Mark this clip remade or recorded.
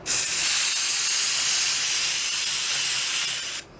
recorded